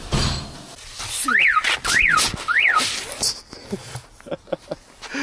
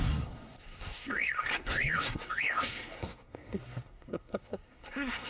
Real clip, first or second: first